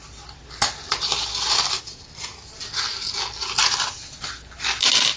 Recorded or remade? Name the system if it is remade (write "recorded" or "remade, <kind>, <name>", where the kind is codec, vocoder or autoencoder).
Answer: recorded